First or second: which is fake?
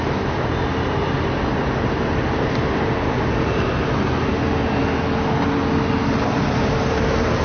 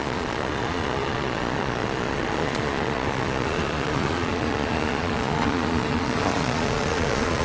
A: second